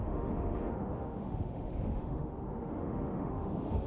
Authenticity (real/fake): fake